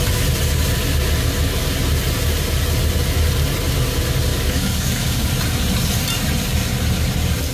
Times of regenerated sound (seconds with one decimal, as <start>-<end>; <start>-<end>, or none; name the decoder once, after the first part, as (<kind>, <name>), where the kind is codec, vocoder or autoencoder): 4.3-5.3 (codec, DAC)

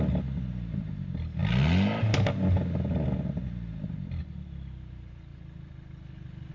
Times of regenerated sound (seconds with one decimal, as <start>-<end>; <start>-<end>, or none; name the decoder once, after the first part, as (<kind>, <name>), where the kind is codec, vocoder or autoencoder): none

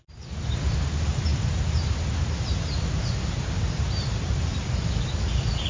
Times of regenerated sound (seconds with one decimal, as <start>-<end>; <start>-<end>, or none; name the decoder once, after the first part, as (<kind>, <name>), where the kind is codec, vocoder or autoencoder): 1.3-4.7 (vocoder, BigVGAN v2)

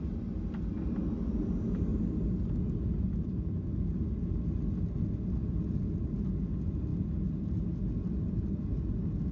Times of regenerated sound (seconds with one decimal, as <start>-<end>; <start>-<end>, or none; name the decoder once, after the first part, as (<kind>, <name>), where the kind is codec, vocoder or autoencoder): none

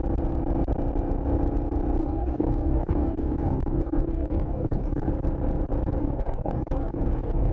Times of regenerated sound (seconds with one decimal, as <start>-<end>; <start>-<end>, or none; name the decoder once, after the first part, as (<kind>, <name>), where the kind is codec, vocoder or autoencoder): 2.0-5.1 (codec, DAC); 6.0-7.5

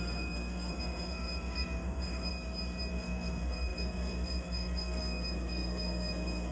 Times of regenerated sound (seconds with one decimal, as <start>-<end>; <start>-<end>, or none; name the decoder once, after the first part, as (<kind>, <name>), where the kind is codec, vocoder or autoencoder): 0.0-2.3 (codec, SNAC); 2.9-6.5